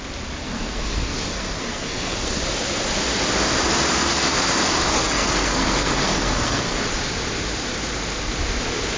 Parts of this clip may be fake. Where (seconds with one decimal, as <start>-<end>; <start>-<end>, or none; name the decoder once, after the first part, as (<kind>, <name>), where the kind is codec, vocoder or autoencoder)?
0.4-2.4 (codec, SNAC); 4.9-6.9